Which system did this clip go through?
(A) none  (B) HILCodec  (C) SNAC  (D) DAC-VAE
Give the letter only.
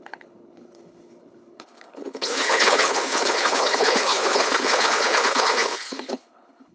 B